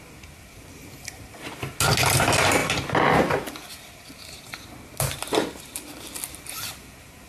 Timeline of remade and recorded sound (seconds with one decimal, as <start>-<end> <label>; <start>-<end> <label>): 0.0-7.3 recorded

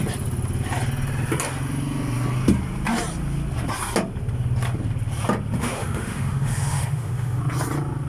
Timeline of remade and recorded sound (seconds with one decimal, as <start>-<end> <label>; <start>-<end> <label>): 0.0-5.6 recorded; 5.6-7.4 remade; 7.4-8.1 recorded

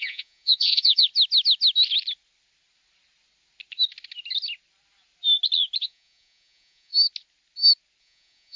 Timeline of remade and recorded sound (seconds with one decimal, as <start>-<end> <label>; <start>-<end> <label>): 0.0-1.1 remade; 1.1-5.8 recorded; 5.8-6.9 remade; 6.9-8.0 recorded; 8.0-8.6 remade

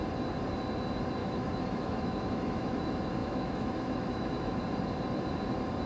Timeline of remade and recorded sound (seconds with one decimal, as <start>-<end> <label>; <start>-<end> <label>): 0.0-1.2 recorded; 1.2-2.8 remade; 2.8-3.2 recorded; 3.2-4.6 remade; 4.6-5.9 recorded

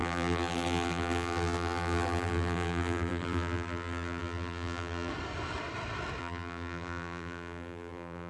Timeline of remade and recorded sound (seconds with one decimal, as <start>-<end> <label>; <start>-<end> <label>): 0.0-5.1 remade; 5.1-6.2 recorded; 6.2-8.3 remade

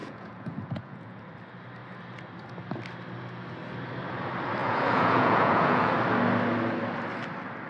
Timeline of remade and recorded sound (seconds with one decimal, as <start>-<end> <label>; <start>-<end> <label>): 0.0-1.2 remade; 1.2-4.6 recorded; 4.6-5.9 remade; 5.9-7.7 recorded